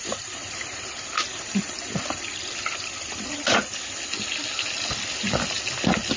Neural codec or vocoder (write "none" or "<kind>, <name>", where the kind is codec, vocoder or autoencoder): none